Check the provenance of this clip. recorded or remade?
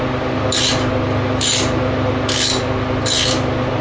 recorded